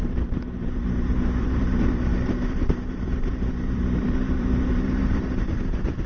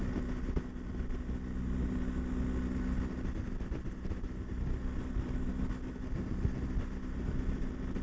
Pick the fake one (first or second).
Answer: first